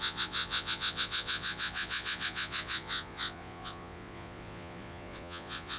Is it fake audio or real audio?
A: fake